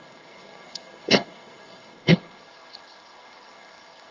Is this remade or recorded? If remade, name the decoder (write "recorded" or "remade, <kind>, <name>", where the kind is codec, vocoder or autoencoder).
remade, codec, SNAC